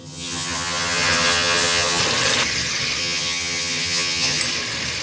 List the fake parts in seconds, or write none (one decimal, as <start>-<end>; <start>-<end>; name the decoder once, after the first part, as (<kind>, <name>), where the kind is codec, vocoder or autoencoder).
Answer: 0.0-2.0 (vocoder, HiFi-GAN); 3.0-4.4